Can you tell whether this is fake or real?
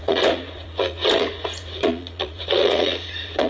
fake